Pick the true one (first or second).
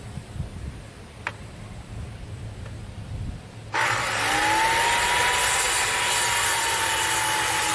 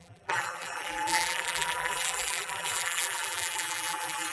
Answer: first